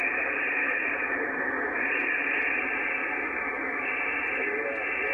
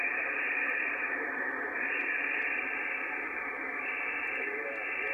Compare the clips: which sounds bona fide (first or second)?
first